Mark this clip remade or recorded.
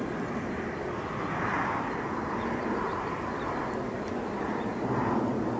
recorded